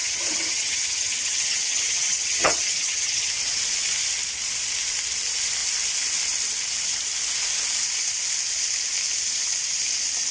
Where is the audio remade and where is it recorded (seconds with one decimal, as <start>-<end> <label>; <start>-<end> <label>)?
0.0-3.3 remade; 3.3-10.3 recorded